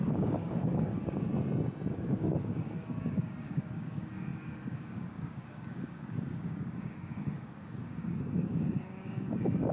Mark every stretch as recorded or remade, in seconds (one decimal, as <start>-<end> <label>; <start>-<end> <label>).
0.0-1.3 remade; 1.3-1.9 recorded; 1.9-9.7 remade